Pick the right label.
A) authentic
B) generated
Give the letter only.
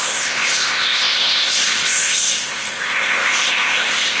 B